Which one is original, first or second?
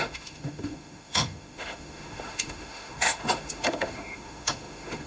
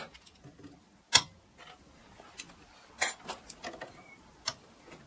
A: second